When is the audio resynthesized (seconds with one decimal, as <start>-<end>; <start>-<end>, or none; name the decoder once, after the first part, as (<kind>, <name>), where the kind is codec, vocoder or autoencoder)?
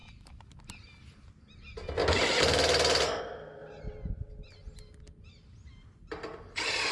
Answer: none